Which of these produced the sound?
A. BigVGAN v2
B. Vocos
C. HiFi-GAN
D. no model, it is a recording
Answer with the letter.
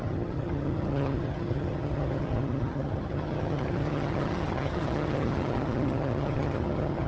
C